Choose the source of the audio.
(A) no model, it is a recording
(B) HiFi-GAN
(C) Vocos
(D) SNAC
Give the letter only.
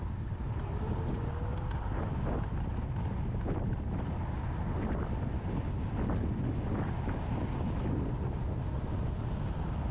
A